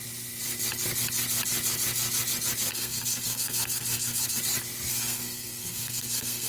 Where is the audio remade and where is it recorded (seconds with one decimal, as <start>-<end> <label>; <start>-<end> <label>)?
0.0-2.7 recorded; 2.7-4.4 remade; 4.4-4.9 recorded; 4.9-6.5 remade